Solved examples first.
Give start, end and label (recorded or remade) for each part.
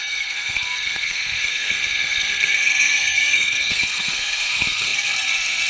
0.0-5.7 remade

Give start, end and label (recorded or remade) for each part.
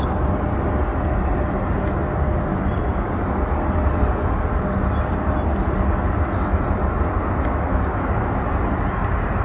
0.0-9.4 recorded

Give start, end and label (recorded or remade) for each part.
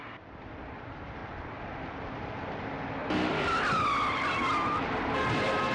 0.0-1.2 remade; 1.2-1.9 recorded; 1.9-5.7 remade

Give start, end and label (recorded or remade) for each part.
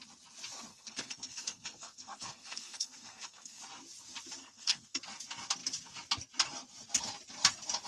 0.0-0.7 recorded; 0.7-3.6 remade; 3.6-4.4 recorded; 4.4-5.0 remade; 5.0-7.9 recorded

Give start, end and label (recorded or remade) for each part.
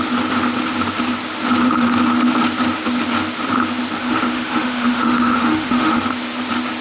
0.0-4.0 recorded; 4.0-6.0 remade; 6.0-6.8 recorded